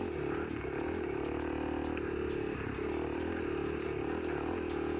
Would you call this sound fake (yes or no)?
no